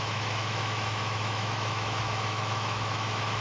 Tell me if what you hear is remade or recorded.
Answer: remade